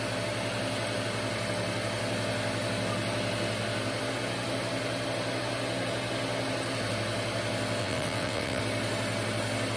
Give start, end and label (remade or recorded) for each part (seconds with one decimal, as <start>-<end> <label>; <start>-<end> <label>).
0.0-7.8 recorded; 7.8-8.6 remade; 8.6-9.8 recorded

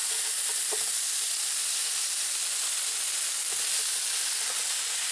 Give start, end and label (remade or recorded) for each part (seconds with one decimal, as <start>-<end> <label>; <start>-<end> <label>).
0.0-5.1 recorded

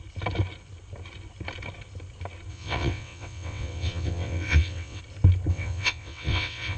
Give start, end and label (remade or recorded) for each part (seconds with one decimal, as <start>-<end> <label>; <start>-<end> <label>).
0.0-2.5 recorded; 2.5-5.0 remade; 5.0-5.5 recorded; 5.5-6.8 remade

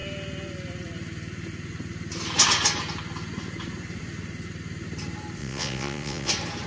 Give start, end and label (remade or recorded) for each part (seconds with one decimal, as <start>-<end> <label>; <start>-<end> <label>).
0.0-5.4 recorded; 5.4-6.3 remade; 6.3-6.7 recorded